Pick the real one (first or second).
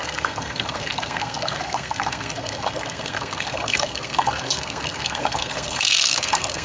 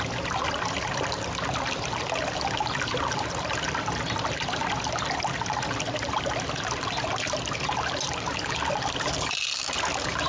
second